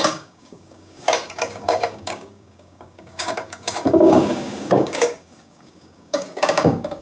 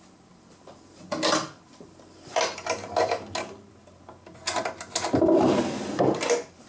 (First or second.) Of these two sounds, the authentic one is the second